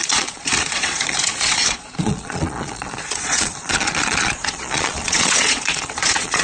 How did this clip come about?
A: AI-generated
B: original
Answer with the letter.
A